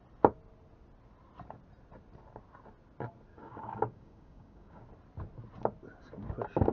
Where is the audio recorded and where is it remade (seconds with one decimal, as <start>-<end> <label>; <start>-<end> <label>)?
0.0-3.3 recorded; 3.3-4.8 remade; 4.8-6.7 recorded